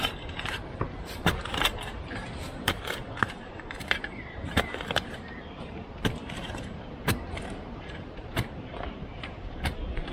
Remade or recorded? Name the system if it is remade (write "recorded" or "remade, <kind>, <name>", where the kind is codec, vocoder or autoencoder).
remade, vocoder, BigVGAN v2